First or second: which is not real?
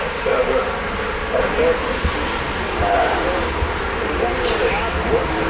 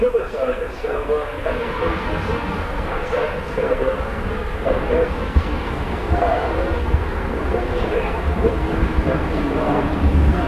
second